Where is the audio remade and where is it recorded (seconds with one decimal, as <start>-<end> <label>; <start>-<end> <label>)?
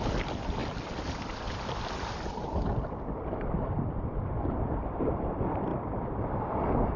0.0-0.6 remade; 0.6-2.3 recorded; 2.3-7.0 remade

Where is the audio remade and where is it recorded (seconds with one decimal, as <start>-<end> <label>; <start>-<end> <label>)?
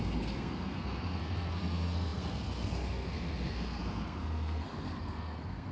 0.0-5.7 remade